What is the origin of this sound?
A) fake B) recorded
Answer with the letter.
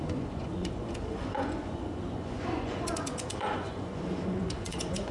A